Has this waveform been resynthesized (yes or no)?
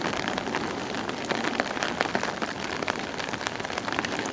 yes